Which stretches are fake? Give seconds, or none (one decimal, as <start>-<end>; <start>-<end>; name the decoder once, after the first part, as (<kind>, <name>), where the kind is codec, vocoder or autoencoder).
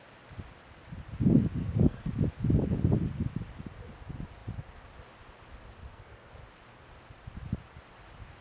1.6-2.1 (codec, SNAC); 5.8-6.4